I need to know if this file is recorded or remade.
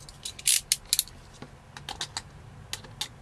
recorded